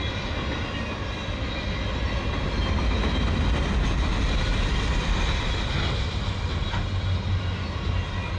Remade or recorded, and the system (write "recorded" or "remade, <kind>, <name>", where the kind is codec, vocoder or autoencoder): recorded